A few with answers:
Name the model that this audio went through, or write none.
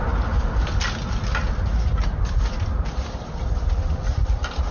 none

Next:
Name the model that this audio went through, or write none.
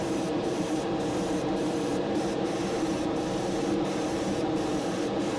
vocoder, BigVGAN v2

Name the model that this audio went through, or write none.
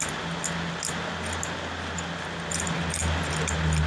none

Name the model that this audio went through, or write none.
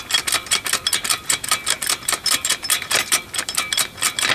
vocoder, BigVGAN v2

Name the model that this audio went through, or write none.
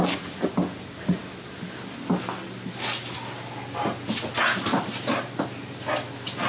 none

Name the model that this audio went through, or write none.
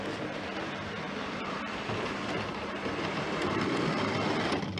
vocoder, BigVGAN v2